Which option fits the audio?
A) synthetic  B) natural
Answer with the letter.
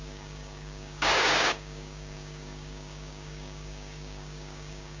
A